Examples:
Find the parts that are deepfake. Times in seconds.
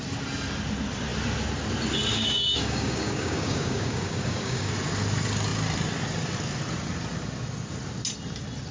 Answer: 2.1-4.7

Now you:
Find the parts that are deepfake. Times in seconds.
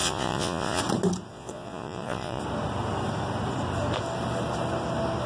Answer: 0.0-0.8; 1.3-2.4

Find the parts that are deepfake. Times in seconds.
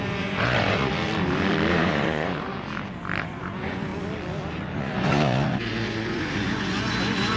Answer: 0.0-0.9; 1.7-2.5; 3.2-3.9; 4.8-7.4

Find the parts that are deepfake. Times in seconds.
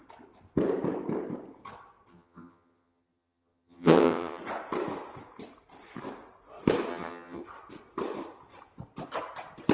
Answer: 2.1-4.4; 6.9-7.4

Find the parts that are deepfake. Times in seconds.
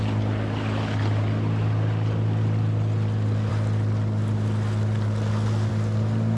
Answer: none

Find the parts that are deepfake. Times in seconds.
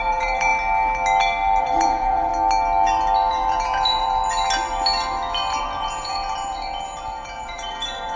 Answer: 0.0-0.5; 1.6-2.3; 3.3-4.2; 5.6-8.2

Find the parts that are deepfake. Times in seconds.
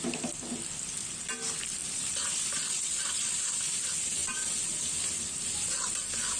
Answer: 1.8-3.5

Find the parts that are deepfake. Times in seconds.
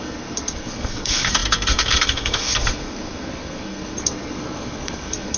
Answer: 0.0-5.4